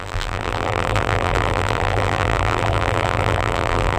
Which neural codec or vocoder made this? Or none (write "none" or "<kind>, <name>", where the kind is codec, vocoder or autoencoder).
vocoder, BigVGAN v2